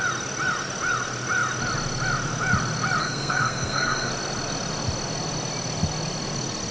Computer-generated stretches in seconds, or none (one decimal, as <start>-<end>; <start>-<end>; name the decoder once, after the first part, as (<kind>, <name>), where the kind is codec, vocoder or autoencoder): 3.0-4.1 (codec, SNAC)